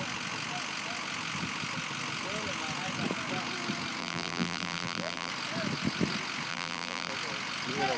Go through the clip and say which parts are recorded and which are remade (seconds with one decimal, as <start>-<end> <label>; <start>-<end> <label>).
0.0-4.0 recorded; 4.0-5.3 remade; 5.3-6.5 recorded; 6.5-7.1 remade; 7.1-8.0 recorded